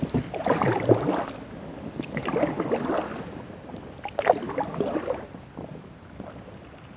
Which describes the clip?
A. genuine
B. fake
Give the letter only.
A